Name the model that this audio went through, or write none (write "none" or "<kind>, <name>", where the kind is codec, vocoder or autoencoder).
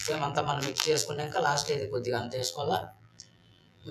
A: vocoder, BigVGAN v2